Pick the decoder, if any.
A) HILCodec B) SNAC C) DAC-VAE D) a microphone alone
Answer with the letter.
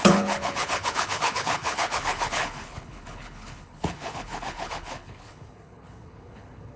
A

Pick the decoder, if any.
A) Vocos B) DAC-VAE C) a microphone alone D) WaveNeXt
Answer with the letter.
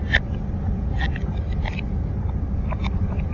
C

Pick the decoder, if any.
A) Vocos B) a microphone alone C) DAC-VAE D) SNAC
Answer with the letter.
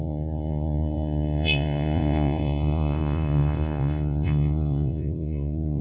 A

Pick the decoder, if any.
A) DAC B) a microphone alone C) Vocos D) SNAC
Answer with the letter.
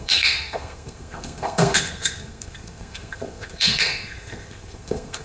D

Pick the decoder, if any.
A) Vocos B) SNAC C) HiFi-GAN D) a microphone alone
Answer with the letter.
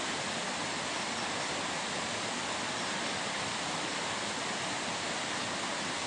D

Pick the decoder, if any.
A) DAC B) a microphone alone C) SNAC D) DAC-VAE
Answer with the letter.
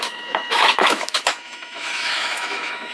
D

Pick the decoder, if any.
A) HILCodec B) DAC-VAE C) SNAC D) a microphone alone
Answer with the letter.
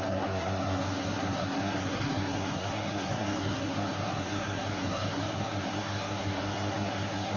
C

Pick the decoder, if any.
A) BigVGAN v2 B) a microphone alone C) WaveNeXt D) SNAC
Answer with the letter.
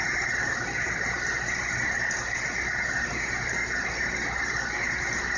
A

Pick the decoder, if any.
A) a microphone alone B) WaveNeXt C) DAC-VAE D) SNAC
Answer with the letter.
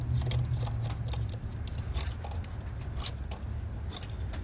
A